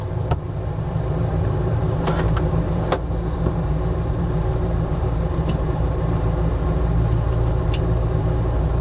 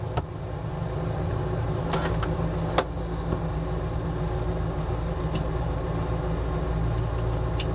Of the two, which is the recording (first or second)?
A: second